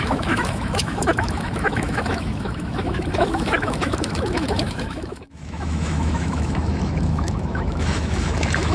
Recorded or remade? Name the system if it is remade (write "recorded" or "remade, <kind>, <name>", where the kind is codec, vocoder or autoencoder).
remade, autoencoder, DAC-VAE